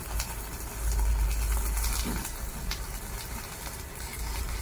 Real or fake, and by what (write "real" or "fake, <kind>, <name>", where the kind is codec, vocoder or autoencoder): real